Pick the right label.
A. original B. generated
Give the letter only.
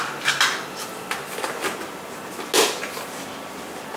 A